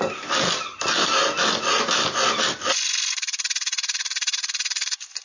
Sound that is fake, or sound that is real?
real